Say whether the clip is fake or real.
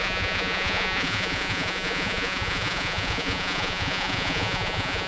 fake